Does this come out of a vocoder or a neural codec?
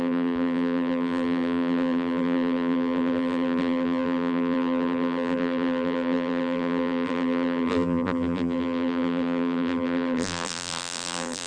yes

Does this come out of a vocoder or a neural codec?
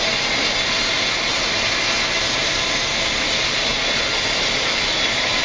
no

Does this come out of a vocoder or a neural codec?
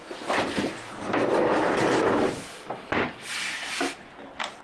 no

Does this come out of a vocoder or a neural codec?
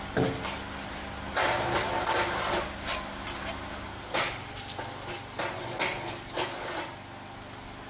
no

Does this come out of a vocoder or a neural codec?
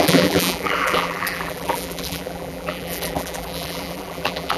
yes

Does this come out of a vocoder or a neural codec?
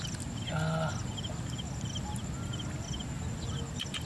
no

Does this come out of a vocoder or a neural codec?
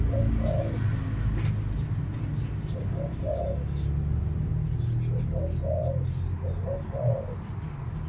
no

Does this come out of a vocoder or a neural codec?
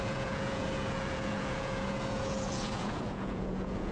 yes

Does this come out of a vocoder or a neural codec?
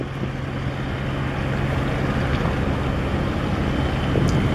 no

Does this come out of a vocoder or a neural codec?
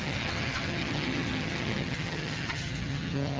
yes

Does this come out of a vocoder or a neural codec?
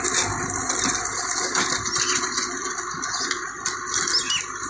no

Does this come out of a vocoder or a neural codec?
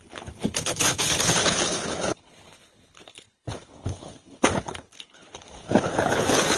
yes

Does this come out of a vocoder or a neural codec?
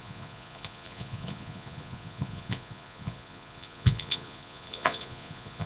yes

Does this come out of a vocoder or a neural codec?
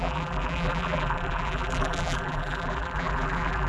yes